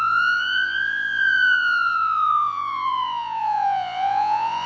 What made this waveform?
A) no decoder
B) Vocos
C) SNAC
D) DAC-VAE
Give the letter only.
B